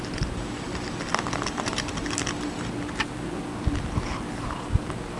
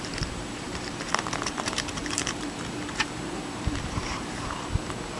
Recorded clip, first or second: first